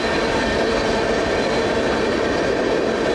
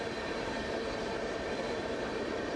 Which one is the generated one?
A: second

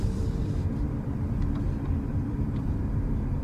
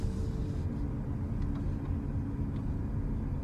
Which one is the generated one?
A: first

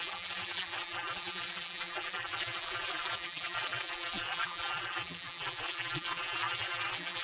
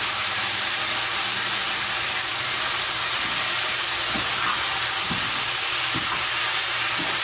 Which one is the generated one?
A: first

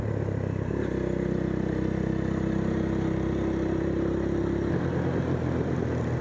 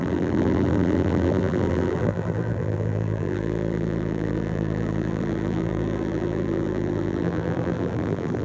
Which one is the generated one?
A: second